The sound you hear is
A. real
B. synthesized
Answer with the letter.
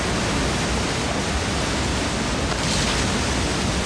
A